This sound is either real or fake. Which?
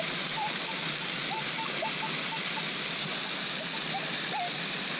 real